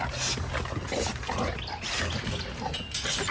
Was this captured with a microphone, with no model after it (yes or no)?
yes